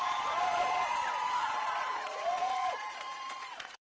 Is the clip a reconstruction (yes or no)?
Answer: yes